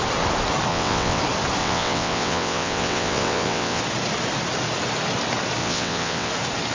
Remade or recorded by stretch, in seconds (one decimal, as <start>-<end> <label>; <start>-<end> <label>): 0.0-0.7 recorded; 0.7-1.2 remade; 1.2-1.6 recorded; 1.6-3.8 remade; 3.8-5.6 recorded; 5.6-6.3 remade; 6.3-6.7 recorded